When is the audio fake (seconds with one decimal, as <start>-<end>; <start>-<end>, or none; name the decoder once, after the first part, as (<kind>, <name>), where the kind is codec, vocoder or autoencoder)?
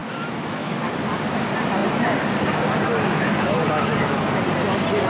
0.0-0.9 (autoencoder, DAC-VAE)